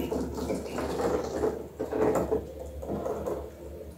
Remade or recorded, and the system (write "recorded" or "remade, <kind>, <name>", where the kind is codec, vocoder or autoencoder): recorded